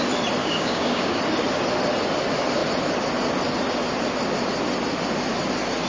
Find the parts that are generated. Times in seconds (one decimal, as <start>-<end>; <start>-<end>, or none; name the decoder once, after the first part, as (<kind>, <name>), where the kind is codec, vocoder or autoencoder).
0.4-1.2 (codec, DAC)

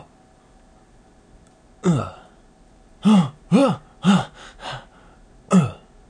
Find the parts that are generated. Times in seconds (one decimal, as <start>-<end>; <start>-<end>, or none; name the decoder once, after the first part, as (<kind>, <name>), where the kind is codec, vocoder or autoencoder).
none

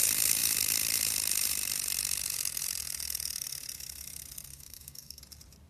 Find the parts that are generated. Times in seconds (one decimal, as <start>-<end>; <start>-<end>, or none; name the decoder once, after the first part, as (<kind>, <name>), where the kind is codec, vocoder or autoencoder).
4.5-5.2 (codec, DAC)

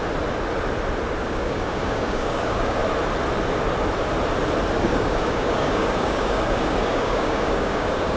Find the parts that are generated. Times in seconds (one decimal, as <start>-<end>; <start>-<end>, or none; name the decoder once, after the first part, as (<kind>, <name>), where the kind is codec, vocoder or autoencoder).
1.2-2.8 (codec, DAC); 4.8-8.2